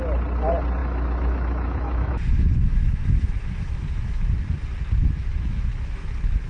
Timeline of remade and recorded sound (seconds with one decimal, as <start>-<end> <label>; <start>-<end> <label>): 0.0-0.8 recorded; 0.8-4.2 remade; 4.2-5.0 recorded; 5.0-6.1 remade; 6.1-6.5 recorded